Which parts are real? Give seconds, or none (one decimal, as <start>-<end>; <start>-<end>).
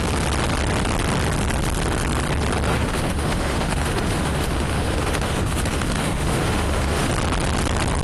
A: 0.0-2.7; 7.1-8.0